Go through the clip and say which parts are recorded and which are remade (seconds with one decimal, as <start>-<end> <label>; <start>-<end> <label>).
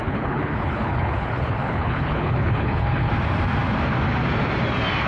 0.0-3.1 remade; 3.1-5.1 recorded